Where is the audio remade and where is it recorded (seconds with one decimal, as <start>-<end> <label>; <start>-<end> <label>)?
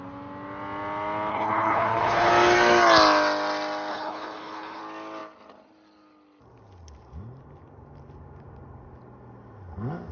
0.0-1.3 recorded; 1.3-2.3 remade; 2.3-3.9 recorded; 3.9-4.8 remade; 4.8-10.1 recorded